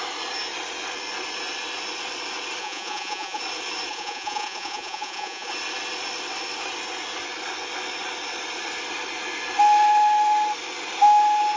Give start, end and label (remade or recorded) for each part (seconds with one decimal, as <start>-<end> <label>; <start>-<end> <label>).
0.0-2.6 recorded; 2.6-3.4 remade; 3.4-3.9 recorded; 3.9-5.5 remade; 5.5-11.6 recorded